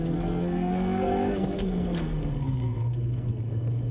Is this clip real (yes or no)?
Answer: no